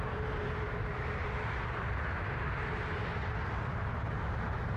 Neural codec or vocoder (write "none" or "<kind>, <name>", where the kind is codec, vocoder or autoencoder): vocoder, BigVGAN v2